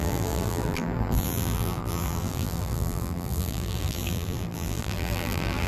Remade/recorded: remade